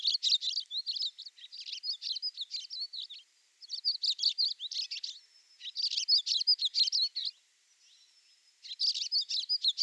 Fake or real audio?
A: real